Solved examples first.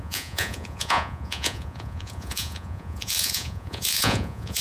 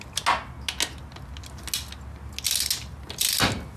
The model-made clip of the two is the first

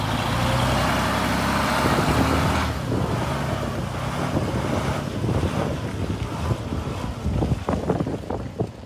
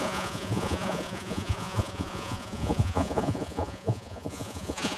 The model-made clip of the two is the second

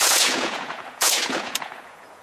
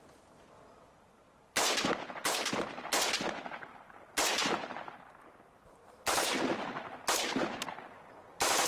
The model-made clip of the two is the first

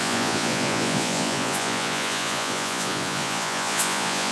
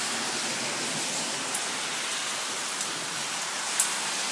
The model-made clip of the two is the first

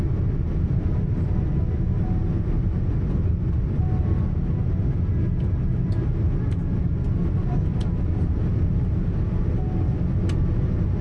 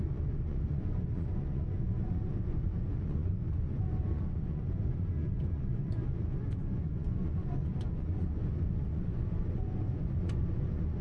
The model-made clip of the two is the second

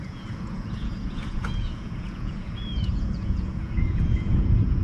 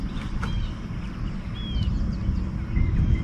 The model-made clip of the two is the first